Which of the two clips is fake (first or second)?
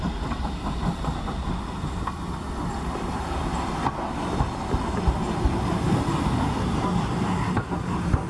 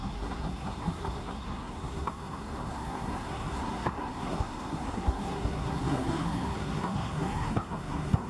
second